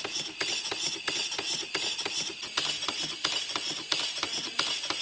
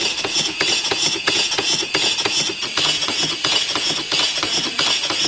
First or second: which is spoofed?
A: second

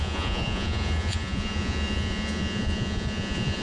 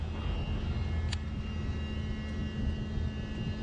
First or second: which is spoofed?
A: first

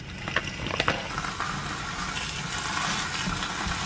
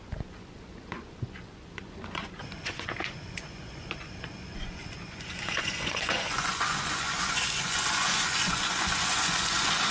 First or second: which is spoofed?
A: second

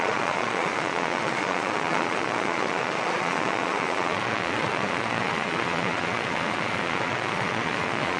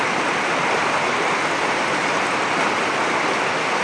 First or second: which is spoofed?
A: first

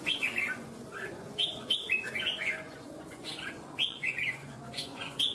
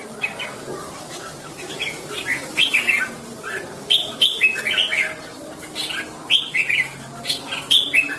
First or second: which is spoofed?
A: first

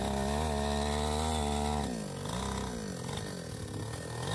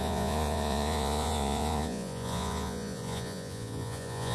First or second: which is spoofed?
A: second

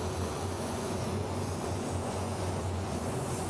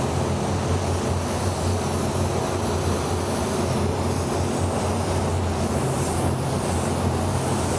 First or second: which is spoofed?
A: first